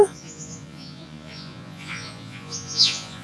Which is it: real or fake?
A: fake